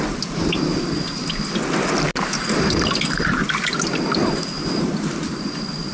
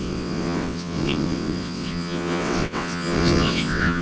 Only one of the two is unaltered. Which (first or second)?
first